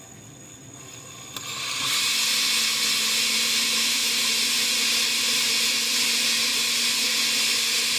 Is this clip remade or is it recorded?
recorded